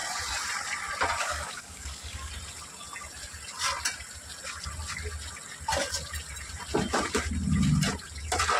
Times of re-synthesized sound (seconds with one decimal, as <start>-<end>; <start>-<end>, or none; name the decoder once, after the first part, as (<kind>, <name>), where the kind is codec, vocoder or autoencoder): 1.2-2.3 (codec, DAC)